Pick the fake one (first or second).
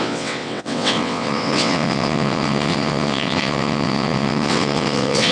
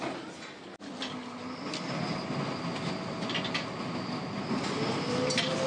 first